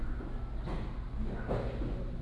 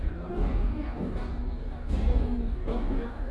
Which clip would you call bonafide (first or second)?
first